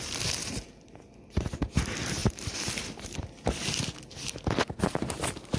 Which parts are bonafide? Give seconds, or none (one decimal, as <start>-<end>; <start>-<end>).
0.0-0.4; 1.5-2.2; 3.2-5.6